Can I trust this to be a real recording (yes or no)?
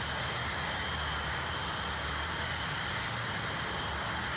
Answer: yes